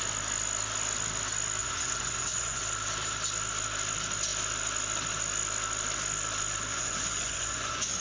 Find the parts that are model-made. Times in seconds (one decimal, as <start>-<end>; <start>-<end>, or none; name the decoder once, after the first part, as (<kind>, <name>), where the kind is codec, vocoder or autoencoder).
1.6-2.6 (vocoder, Vocos); 6.7-8.0